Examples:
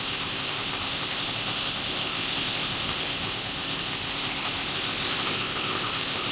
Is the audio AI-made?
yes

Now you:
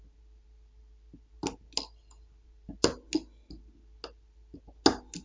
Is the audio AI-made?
no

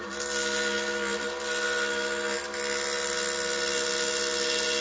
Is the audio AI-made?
no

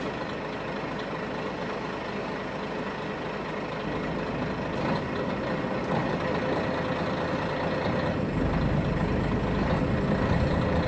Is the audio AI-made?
no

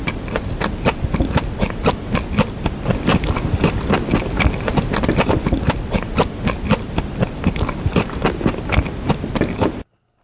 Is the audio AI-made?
no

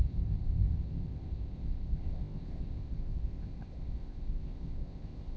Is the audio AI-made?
yes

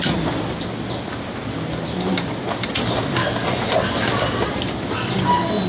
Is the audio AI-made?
no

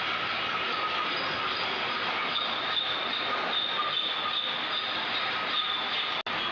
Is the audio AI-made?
no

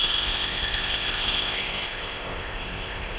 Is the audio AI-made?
yes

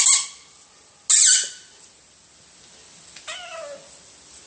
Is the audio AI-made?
no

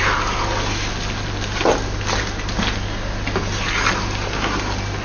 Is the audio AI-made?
no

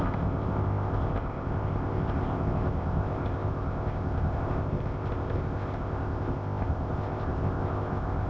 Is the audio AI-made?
yes